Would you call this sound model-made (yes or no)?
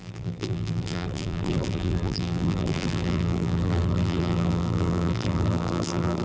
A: yes